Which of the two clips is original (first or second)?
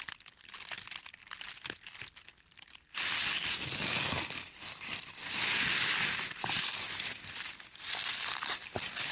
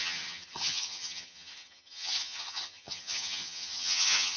first